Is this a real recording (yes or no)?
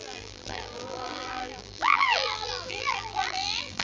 no